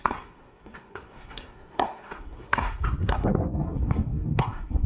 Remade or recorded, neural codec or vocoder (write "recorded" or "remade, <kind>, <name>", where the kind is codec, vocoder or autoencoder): remade, codec, SNAC